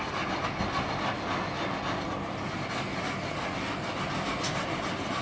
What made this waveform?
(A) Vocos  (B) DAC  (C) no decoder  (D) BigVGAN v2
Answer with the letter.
C